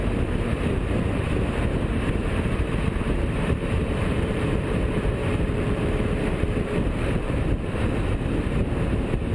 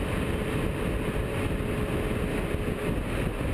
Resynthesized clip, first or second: first